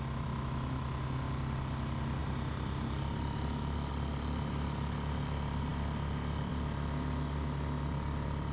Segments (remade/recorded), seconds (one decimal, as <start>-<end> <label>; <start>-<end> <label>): 0.0-2.2 recorded; 2.2-3.9 remade; 3.9-8.5 recorded